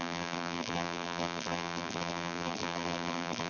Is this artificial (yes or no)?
yes